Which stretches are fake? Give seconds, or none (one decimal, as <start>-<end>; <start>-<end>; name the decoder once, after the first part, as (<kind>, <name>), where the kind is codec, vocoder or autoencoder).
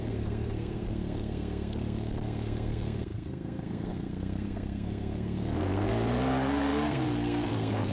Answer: 0.0-7.9 (codec, SNAC)